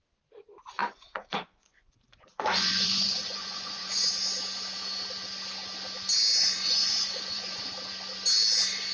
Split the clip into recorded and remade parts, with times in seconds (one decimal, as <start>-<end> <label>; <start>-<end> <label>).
0.0-0.8 recorded; 0.8-4.1 remade; 4.1-6.4 recorded; 6.4-7.7 remade; 7.7-8.9 recorded